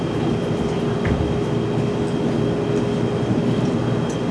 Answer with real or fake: real